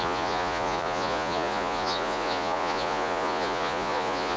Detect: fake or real fake